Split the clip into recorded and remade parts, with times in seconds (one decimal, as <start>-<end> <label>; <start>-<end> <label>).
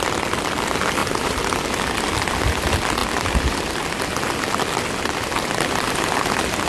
0.0-1.0 recorded; 1.0-1.6 remade; 1.6-6.7 recorded